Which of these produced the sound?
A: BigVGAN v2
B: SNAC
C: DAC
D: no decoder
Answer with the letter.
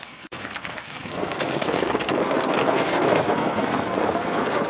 B